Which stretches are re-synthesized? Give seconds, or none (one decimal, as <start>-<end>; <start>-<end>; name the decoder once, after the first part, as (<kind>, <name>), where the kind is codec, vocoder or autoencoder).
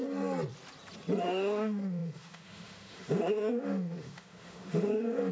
1.2-5.3 (autoencoder, DAC-VAE)